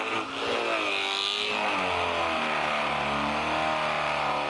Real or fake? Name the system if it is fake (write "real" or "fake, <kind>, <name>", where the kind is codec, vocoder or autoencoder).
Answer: real